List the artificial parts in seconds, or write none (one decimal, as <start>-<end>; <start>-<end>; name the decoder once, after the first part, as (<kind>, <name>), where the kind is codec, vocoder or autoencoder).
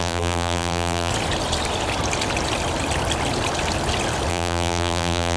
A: 0.0-1.1 (vocoder, BigVGAN v2); 4.3-5.4